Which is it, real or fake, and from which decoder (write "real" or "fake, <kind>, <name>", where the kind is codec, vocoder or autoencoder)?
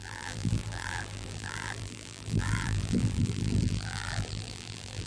fake, vocoder, BigVGAN v2